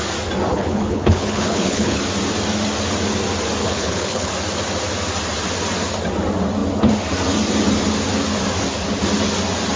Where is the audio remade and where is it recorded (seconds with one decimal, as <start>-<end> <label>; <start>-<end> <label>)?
0.0-0.5 recorded; 0.5-2.0 remade; 2.0-3.6 recorded; 3.6-4.3 remade; 4.3-9.8 recorded